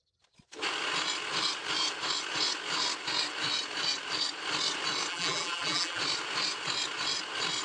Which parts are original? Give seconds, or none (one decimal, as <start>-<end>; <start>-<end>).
0.0-5.1; 6.0-7.6